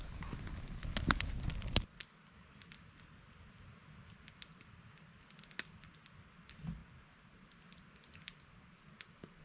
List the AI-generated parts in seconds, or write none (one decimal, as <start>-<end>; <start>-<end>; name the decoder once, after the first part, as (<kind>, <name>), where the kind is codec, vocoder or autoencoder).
none